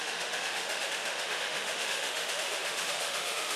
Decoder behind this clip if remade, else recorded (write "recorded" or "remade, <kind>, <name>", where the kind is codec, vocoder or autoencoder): remade, autoencoder, DAC-VAE